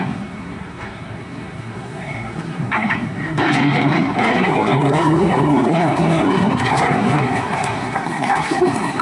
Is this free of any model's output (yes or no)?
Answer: no